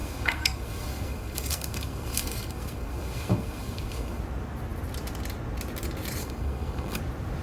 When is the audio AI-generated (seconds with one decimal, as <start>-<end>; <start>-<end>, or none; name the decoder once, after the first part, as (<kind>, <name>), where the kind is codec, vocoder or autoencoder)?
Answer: 0.0-4.2 (codec, SNAC); 6.2-7.0